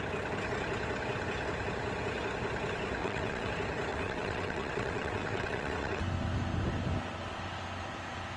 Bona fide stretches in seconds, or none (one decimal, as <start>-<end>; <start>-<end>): 0.0-3.0; 3.5-3.9; 6.0-8.4